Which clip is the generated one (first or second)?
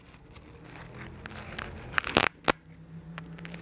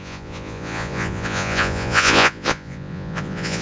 second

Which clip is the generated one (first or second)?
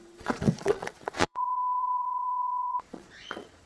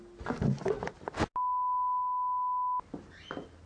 first